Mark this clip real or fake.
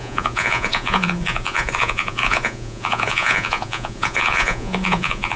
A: fake